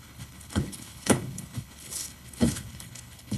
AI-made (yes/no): yes